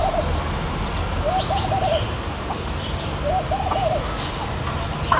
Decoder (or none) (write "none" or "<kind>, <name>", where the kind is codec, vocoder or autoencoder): none